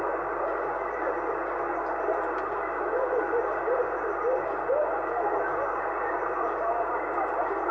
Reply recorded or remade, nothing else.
recorded